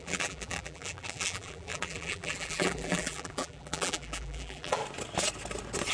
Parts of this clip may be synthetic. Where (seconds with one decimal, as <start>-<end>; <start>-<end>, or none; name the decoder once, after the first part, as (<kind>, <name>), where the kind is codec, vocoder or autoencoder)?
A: 0.0-4.8 (vocoder, BigVGAN v2)